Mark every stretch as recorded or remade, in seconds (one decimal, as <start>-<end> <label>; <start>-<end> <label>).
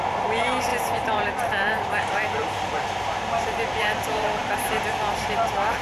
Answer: 0.0-0.7 recorded; 0.7-1.7 remade; 1.7-3.8 recorded; 3.8-5.8 remade